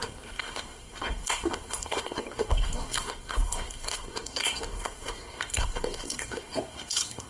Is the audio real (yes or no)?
no